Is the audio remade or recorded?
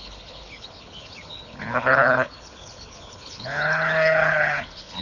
remade